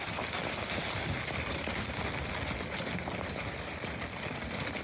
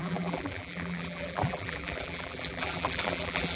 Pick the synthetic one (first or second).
second